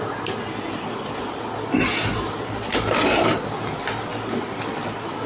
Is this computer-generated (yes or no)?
no